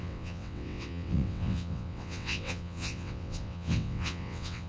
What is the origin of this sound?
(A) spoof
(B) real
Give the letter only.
A